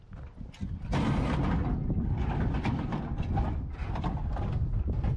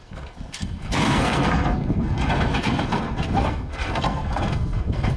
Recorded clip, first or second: first